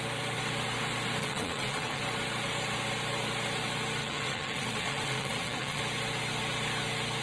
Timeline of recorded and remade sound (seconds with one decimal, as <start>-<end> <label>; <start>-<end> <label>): 0.0-1.2 recorded; 1.2-2.0 remade; 2.0-4.0 recorded; 4.0-5.8 remade; 5.8-7.2 recorded